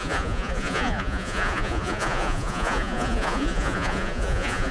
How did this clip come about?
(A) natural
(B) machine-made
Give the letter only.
B